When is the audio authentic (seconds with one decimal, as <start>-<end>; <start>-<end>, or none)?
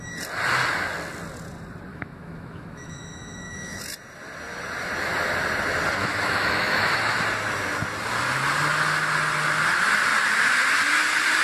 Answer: 0.0-1.9; 3.8-6.0; 7.0-11.4